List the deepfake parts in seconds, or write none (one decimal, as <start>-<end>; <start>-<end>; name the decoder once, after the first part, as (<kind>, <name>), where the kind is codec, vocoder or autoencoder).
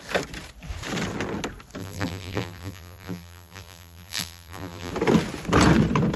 1.8-4.9 (vocoder, BigVGAN v2)